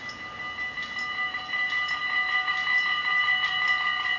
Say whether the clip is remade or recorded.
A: recorded